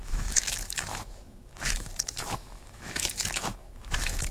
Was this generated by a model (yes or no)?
yes